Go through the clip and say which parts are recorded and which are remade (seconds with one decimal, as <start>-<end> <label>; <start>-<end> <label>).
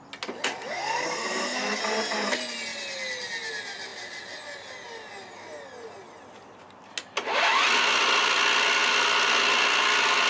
0.0-0.7 recorded; 0.7-1.8 remade; 1.8-10.3 recorded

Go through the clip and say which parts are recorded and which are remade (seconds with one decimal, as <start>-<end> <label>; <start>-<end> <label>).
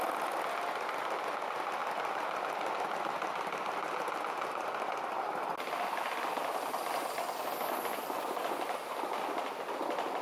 0.0-10.2 recorded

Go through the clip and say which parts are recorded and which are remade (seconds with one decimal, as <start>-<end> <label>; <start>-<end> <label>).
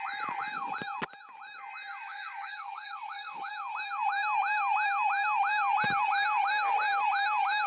0.0-1.9 recorded; 1.9-3.5 remade; 3.5-7.7 recorded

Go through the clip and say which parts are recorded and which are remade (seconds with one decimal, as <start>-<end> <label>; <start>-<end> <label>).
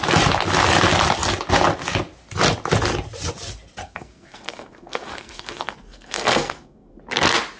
0.0-3.8 recorded; 3.8-7.0 remade; 7.0-7.6 recorded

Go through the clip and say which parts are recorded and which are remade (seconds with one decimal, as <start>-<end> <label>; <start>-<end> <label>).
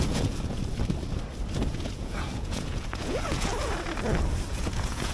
0.0-0.6 remade; 0.6-1.7 recorded; 1.7-3.5 remade; 3.5-4.5 recorded; 4.5-5.1 remade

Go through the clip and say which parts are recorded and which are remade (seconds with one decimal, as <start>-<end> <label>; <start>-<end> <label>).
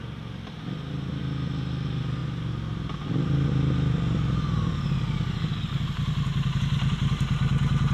0.0-7.9 recorded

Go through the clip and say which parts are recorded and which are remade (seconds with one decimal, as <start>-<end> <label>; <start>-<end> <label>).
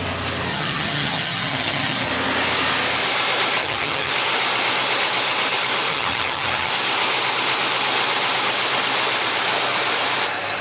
0.0-0.5 recorded; 0.5-2.1 remade; 2.1-3.6 recorded; 3.6-4.1 remade; 4.1-5.9 recorded; 5.9-6.7 remade; 6.7-10.6 recorded